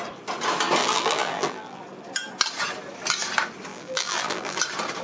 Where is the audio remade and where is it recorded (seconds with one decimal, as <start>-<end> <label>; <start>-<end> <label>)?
0.0-0.8 recorded; 0.8-1.8 remade; 1.8-3.7 recorded; 3.7-4.6 remade; 4.6-5.0 recorded